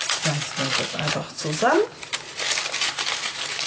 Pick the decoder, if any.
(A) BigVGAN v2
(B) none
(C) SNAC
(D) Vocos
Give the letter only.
B